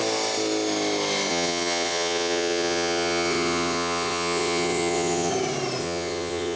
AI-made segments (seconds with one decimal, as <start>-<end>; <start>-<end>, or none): 1.3-5.3; 5.8-6.6